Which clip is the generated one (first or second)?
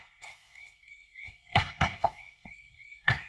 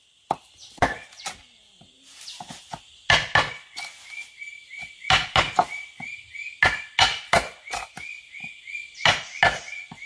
first